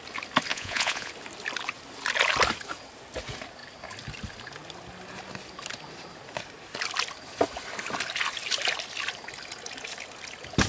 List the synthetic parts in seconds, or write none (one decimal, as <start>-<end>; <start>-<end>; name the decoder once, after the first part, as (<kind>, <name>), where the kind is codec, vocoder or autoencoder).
0.5-1.1 (vocoder, Vocos)